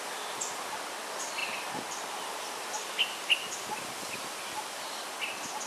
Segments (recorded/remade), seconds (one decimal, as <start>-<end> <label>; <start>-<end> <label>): 0.0-5.7 recorded